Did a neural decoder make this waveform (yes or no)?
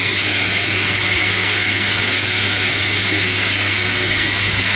yes